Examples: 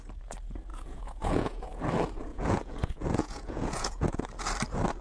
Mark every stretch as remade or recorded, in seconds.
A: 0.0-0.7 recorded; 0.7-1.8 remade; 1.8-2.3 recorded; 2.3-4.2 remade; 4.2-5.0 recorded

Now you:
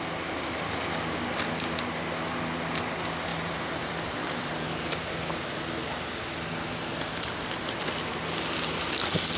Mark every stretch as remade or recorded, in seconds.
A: 0.0-3.3 recorded; 3.3-5.1 remade; 5.1-9.4 recorded